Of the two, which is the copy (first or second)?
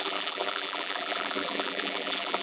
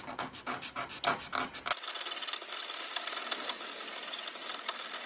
first